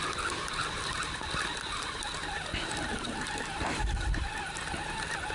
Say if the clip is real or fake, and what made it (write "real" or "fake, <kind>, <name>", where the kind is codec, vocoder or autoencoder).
real